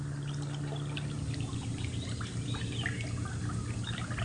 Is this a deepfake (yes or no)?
no